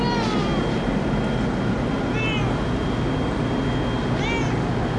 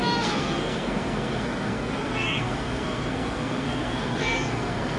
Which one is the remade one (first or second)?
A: second